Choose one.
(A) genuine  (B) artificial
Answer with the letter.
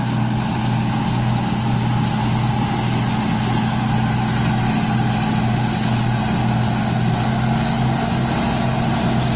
A